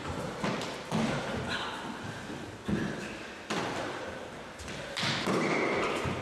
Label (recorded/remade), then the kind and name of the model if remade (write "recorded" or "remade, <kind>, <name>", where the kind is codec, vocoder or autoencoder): recorded